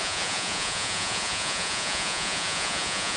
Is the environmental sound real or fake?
fake